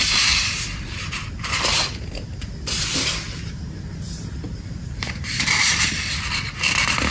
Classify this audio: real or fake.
fake